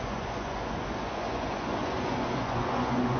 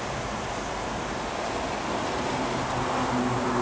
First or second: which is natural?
second